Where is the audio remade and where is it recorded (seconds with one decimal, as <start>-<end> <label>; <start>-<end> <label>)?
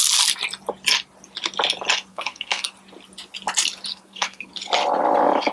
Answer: 0.0-2.1 recorded; 2.1-2.7 remade; 2.7-3.9 recorded; 3.9-4.5 remade; 4.5-5.5 recorded